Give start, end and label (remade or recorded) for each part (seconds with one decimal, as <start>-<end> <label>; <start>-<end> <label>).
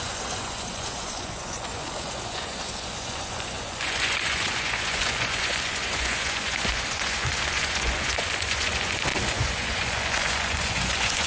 0.0-11.3 remade